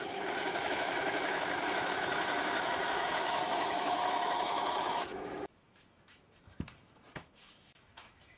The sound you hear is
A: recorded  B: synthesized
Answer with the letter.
B